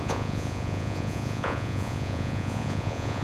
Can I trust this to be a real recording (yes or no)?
no